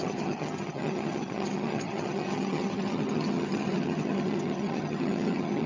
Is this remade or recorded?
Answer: remade